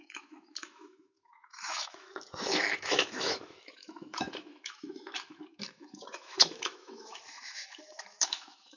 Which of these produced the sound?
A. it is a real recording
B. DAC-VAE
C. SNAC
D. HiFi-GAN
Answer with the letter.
B